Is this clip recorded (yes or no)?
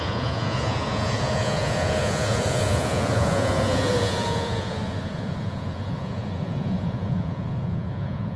no